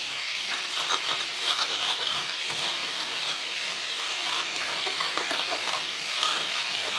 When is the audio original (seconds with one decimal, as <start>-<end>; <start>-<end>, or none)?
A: 0.5-1.4